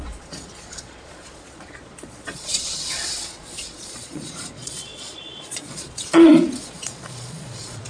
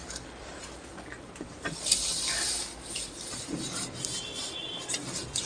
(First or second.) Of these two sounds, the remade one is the first